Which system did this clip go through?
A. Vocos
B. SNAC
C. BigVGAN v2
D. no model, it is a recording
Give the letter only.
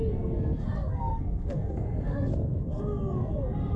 B